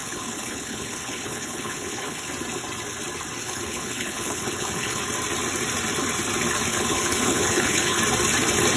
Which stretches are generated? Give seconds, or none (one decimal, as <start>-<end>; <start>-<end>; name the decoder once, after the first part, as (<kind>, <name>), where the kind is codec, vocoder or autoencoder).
0.0-2.3 (codec, HILCodec); 3.4-5.0; 6.7-8.0